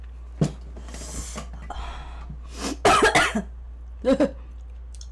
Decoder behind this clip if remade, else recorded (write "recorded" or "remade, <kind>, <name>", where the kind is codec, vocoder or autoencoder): recorded